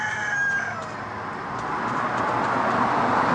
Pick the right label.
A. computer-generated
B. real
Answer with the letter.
B